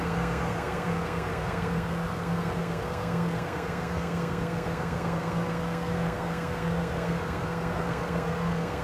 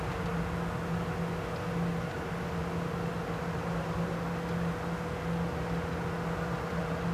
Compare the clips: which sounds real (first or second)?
second